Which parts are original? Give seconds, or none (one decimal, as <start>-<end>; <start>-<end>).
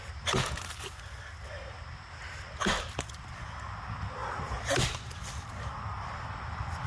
0.0-6.9